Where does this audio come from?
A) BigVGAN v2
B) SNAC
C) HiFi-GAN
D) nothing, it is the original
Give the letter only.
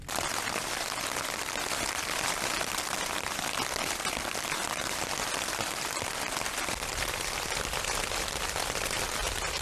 D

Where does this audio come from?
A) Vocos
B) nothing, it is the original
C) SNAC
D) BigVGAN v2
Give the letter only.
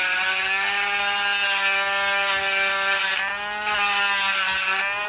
B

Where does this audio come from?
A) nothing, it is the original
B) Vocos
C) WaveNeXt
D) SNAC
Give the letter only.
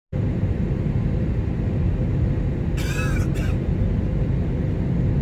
A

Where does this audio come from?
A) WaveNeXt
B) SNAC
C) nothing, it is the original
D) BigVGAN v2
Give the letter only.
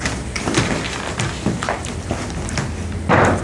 D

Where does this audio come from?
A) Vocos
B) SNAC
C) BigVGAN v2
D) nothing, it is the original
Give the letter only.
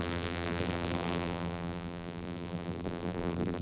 C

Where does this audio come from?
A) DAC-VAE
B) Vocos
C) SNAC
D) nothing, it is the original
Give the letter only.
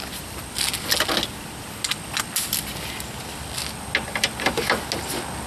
D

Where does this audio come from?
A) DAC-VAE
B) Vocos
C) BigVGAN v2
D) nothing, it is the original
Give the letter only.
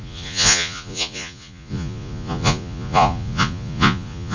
B